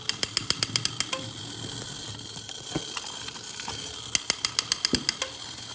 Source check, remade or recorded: recorded